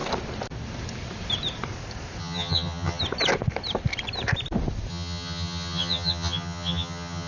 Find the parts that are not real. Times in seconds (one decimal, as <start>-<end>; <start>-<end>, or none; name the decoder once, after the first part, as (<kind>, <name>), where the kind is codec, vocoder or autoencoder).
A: 2.2-3.0 (vocoder, HiFi-GAN); 4.9-7.3